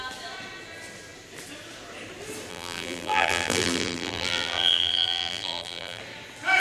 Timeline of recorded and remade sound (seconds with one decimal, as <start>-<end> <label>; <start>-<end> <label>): 0.0-2.5 recorded; 2.5-6.0 remade; 6.0-6.6 recorded